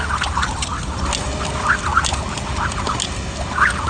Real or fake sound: real